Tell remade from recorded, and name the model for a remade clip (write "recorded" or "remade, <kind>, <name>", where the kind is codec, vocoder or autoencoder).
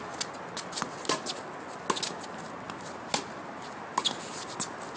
recorded